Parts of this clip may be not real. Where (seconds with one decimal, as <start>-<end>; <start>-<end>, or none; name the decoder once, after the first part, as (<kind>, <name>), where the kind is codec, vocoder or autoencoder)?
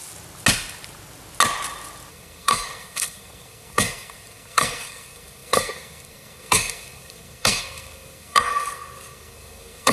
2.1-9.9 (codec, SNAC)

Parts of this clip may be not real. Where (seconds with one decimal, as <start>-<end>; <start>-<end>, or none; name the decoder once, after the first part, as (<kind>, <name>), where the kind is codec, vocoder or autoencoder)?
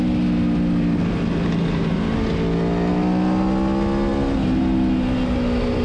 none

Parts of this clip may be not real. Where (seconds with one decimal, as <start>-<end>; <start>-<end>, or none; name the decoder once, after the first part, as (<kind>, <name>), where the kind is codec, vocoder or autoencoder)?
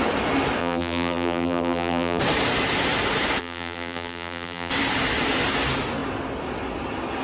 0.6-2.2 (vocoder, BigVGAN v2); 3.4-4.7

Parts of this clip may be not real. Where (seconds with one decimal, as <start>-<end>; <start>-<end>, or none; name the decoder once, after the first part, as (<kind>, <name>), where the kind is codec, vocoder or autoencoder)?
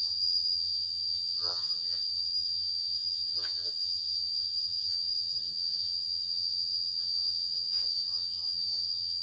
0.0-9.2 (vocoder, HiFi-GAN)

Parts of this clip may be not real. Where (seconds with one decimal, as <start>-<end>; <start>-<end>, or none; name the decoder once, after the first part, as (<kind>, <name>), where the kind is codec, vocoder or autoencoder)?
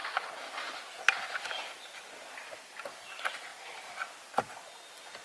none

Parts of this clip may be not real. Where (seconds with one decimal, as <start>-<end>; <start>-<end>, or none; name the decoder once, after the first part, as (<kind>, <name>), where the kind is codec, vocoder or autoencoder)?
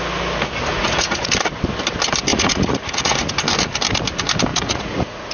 0.7-1.3 (vocoder, Vocos); 2.3-3.3; 4.5-5.3